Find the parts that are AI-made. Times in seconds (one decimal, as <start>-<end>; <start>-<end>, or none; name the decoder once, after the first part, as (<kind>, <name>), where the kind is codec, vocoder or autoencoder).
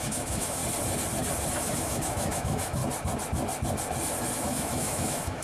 0.0-0.6 (autoencoder, DAC-VAE); 1.5-2.8; 4.4-5.4